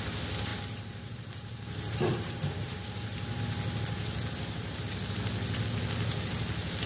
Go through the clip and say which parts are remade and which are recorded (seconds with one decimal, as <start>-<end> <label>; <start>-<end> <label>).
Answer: 0.0-0.5 recorded; 0.5-3.4 remade; 3.4-6.9 recorded